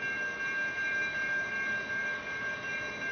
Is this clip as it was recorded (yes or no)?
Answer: yes